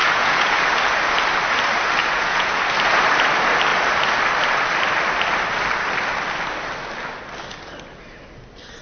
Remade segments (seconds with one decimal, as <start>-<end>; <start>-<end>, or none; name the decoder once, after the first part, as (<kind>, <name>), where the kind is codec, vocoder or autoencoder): 0.0-0.5 (vocoder, Vocos); 2.0-2.6